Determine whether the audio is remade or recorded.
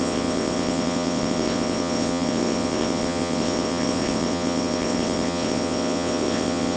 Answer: remade